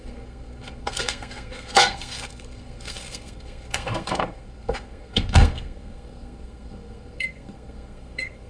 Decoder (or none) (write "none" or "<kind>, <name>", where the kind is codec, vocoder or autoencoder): codec, SNAC